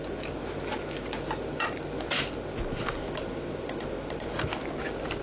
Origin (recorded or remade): recorded